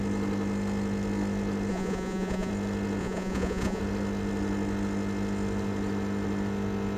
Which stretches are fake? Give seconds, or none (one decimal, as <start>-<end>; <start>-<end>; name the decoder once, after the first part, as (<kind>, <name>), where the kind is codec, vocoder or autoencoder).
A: 1.7-2.5 (vocoder, Vocos); 3.0-3.8